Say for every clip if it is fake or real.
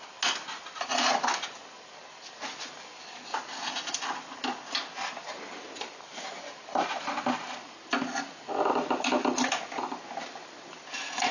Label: real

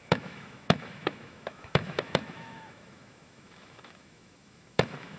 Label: fake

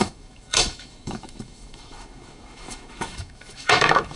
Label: fake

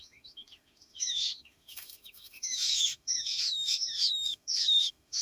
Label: fake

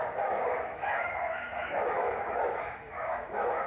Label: fake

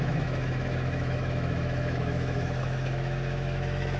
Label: fake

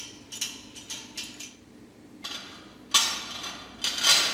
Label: real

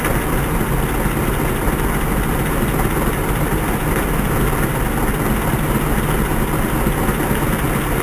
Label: real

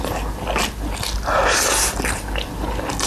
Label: real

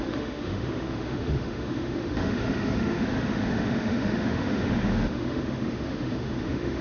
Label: fake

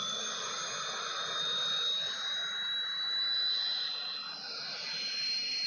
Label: real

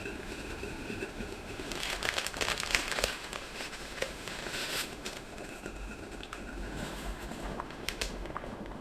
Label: fake